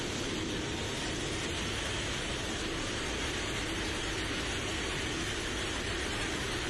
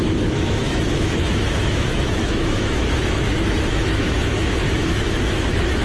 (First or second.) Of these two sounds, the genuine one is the first